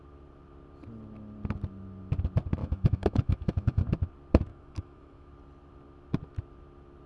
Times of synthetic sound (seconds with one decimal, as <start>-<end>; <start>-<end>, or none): 2.6-3.8; 4.5-5.3